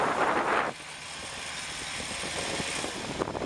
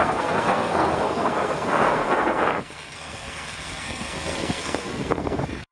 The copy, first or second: second